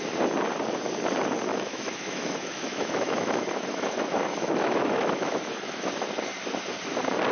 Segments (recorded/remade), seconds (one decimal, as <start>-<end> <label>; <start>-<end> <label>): 0.0-1.5 recorded; 1.5-5.9 remade; 5.9-7.3 recorded